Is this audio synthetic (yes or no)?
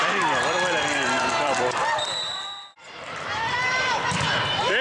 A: yes